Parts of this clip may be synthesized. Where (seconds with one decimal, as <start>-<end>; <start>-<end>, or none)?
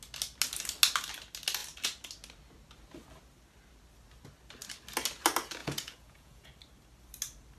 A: 5.6-6.5